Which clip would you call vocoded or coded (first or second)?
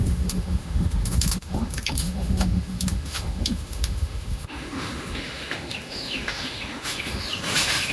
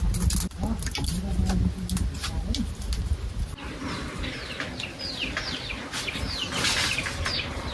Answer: first